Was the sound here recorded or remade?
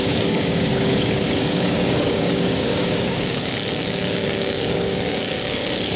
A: remade